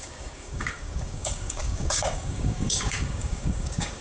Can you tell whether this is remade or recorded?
remade